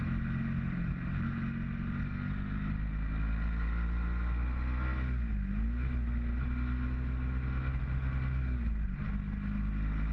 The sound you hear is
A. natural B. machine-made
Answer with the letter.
A